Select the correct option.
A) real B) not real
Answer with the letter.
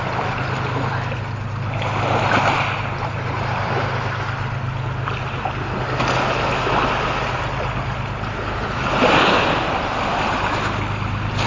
A